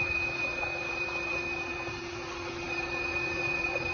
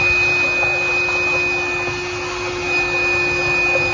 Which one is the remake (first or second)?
first